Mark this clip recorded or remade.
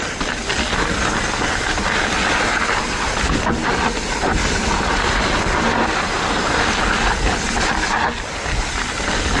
recorded